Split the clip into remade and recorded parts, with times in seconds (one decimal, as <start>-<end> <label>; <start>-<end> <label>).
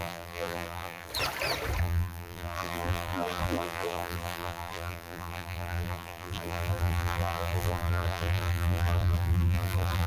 0.0-1.1 remade; 1.1-1.8 recorded; 1.8-10.1 remade